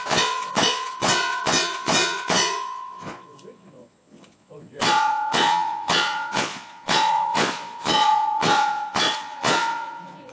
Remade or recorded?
remade